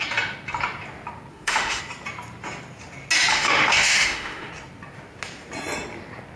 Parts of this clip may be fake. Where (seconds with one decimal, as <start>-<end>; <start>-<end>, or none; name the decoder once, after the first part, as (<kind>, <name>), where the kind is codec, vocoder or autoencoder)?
1.3-1.8 (autoencoder, DAC-VAE); 3.3-4.5